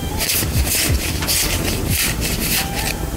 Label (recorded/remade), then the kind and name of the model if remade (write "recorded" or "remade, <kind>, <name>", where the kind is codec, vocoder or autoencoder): remade, vocoder, BigVGAN v2